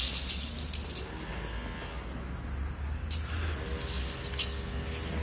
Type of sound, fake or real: real